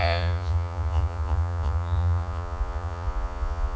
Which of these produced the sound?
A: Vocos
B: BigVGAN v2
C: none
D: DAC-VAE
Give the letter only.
A